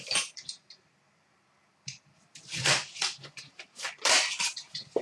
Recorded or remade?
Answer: remade